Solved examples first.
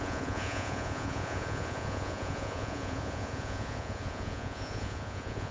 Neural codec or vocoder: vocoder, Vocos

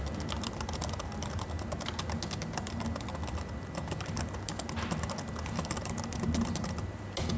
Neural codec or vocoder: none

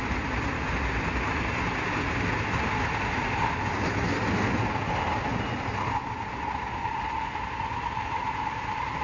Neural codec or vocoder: none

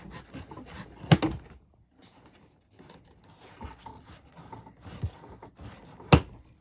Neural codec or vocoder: none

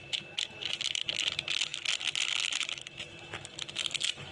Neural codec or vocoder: none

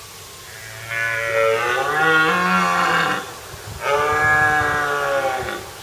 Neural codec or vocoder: none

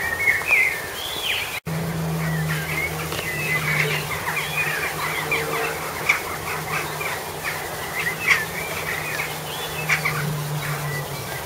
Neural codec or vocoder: none